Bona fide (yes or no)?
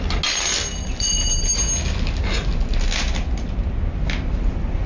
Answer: yes